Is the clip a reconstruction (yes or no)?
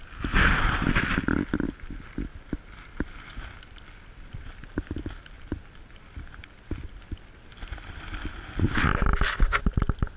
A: no